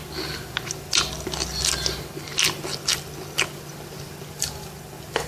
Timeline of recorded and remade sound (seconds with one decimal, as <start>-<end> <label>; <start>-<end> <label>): 0.0-5.3 recorded